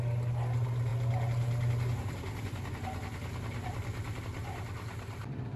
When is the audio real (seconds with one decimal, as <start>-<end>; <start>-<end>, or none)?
0.0-5.6